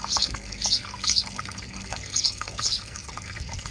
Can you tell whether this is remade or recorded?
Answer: remade